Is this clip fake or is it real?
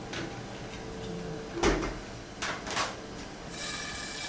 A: real